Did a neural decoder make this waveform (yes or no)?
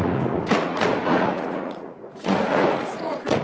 yes